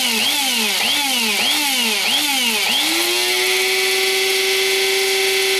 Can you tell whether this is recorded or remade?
recorded